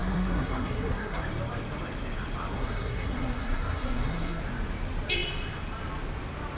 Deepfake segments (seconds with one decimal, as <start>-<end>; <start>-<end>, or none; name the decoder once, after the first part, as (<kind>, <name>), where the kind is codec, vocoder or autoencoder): 0.0-1.2 (codec, SNAC); 2.5-4.4